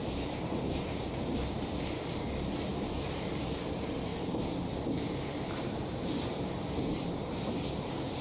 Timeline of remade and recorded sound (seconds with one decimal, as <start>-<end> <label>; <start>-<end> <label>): 0.0-4.1 remade; 4.1-4.7 recorded; 4.7-8.2 remade

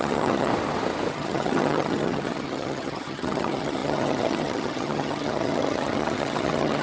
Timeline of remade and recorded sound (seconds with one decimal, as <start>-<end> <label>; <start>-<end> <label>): 0.0-0.5 remade; 0.5-1.1 recorded; 1.1-6.8 remade

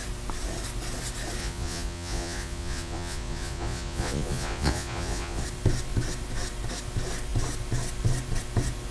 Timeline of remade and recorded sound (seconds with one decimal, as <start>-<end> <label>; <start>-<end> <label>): 0.0-1.4 recorded; 1.4-5.4 remade; 5.4-8.9 recorded

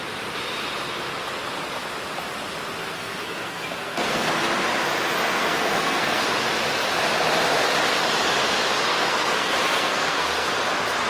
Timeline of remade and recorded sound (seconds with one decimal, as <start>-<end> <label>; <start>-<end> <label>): 0.0-2.8 recorded; 2.8-4.3 remade; 4.3-5.2 recorded; 5.2-6.2 remade; 6.2-8.9 recorded; 8.9-10.5 remade; 10.5-11.1 recorded

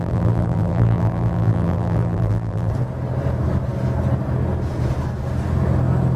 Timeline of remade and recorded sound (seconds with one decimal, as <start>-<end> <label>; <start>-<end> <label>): 0.0-2.7 remade; 2.7-6.2 recorded

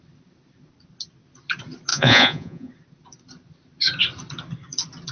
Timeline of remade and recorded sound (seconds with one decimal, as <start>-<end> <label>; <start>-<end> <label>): 0.0-1.9 recorded; 1.9-2.7 remade; 2.7-5.1 recorded

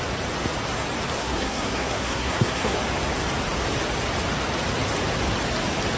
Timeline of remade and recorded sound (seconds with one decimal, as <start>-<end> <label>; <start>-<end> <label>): 0.0-1.2 recorded; 1.2-2.8 remade; 2.8-6.0 recorded